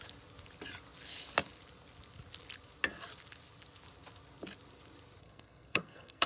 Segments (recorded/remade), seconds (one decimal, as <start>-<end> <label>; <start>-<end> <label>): 0.0-5.2 recorded; 5.2-6.3 remade